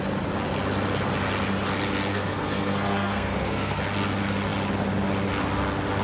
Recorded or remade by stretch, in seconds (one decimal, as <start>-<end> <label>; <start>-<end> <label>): 0.0-2.1 recorded; 2.1-3.8 remade; 3.8-6.0 recorded

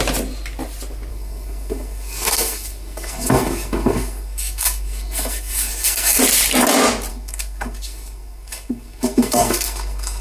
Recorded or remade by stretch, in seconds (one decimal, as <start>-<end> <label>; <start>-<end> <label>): 0.0-1.1 recorded; 1.1-6.2 remade; 6.2-7.1 recorded; 7.1-10.2 remade

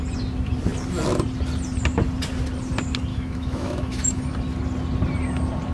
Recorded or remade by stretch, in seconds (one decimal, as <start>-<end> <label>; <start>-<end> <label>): 0.0-3.1 recorded; 3.1-4.2 remade; 4.2-5.7 recorded

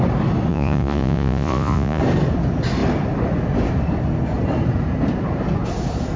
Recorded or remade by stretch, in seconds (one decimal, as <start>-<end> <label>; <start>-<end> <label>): 0.0-0.5 recorded; 0.5-2.0 remade; 2.0-6.2 recorded

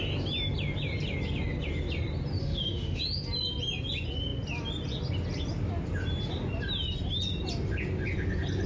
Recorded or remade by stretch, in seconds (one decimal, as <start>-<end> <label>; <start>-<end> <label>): 0.0-2.4 recorded; 2.4-3.0 remade; 3.0-8.7 recorded

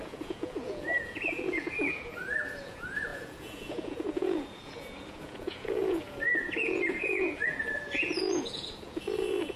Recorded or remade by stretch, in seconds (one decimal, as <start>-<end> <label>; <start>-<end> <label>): 0.0-9.6 remade

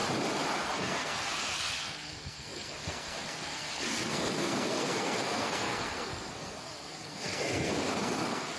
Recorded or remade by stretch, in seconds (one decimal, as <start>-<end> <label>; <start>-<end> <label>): 0.0-0.6 recorded; 0.6-8.6 remade

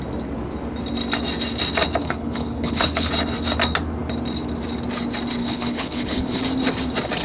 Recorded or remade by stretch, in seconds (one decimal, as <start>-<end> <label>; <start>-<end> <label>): 0.0-2.0 recorded; 2.0-3.1 remade; 3.1-5.4 recorded; 5.4-6.4 remade; 6.4-7.2 recorded